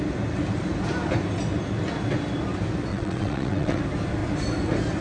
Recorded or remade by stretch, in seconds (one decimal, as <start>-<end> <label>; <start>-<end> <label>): 0.0-2.9 recorded; 2.9-3.8 remade; 3.8-5.0 recorded